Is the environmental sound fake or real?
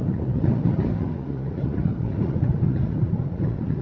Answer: fake